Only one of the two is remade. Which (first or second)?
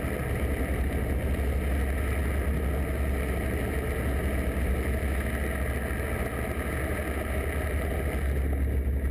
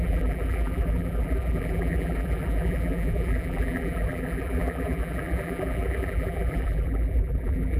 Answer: second